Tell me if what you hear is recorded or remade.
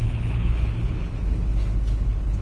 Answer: remade